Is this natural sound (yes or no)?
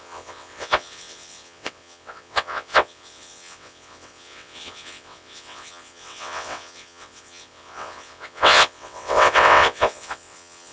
no